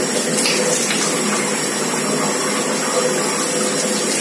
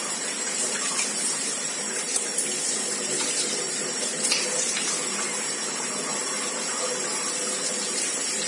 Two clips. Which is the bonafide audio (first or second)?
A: first